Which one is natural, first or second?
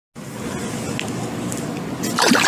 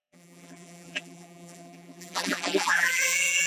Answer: first